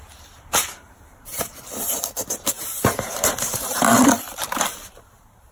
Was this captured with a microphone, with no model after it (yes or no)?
no